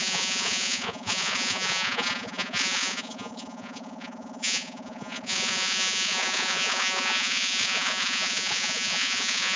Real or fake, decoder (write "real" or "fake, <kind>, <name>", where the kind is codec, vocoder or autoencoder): fake, vocoder, Vocos